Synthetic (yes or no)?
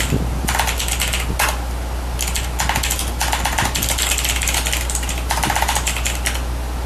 no